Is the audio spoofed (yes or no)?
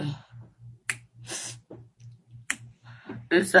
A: no